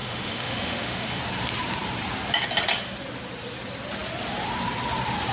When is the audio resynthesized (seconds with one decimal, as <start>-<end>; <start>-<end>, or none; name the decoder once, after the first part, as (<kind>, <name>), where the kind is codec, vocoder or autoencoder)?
0.0-1.2 (autoencoder, DAC-VAE)